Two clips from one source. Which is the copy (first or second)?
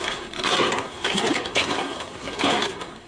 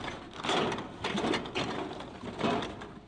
first